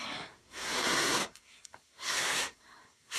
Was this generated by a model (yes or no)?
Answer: yes